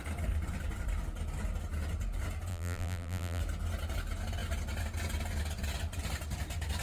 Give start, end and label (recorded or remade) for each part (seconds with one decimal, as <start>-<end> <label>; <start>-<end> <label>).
0.0-2.5 recorded; 2.5-3.4 remade; 3.4-6.8 recorded